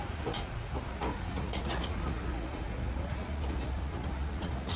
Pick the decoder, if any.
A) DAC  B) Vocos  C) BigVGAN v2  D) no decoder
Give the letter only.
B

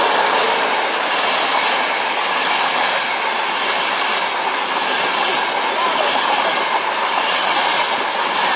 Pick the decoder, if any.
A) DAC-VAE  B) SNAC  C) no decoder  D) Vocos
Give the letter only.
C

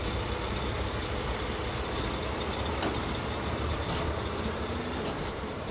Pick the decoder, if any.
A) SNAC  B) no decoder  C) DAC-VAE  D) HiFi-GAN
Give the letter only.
B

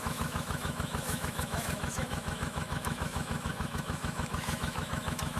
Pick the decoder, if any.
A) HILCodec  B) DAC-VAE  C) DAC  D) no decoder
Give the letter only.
B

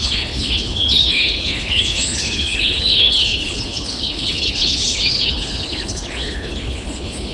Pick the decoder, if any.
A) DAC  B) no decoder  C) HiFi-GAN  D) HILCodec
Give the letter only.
D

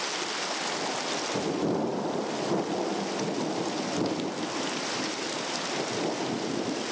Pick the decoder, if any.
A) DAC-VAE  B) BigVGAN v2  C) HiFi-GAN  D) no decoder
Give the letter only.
D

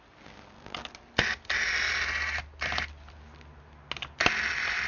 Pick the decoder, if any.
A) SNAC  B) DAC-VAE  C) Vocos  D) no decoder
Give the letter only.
D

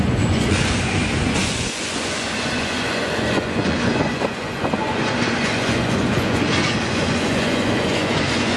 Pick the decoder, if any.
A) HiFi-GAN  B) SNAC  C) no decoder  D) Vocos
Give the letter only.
D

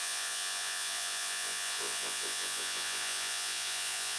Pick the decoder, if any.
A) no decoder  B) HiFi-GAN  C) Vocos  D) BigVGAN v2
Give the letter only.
C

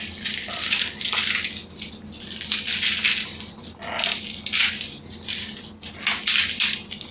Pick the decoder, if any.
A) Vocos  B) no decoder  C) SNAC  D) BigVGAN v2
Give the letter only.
B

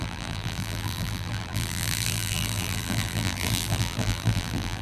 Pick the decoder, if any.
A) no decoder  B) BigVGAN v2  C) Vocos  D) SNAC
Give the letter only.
B